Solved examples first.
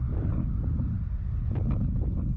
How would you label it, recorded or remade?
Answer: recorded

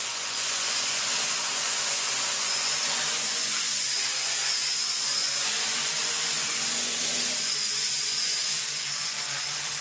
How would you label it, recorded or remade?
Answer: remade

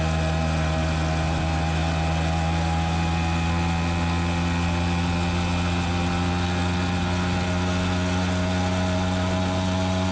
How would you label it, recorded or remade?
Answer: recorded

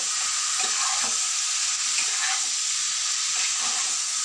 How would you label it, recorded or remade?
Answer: recorded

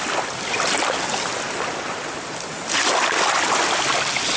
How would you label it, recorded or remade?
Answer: recorded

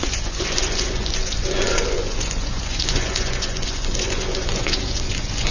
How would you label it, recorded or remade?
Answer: remade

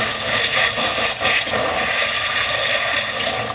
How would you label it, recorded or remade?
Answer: recorded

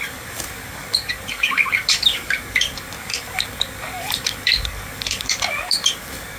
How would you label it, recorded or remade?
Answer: remade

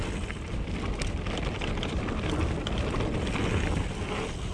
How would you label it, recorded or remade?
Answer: recorded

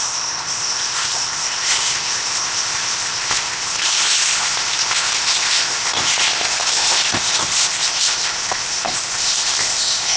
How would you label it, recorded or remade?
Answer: remade